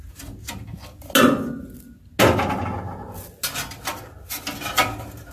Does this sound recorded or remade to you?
recorded